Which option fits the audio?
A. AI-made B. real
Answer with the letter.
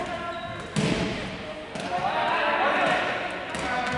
B